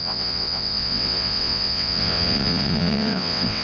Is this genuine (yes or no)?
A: no